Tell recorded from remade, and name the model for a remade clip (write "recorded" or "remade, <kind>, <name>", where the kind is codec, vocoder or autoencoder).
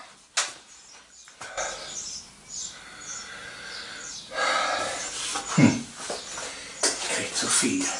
recorded